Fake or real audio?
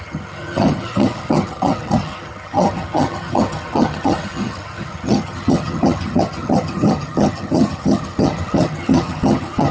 fake